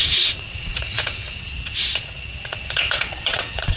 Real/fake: fake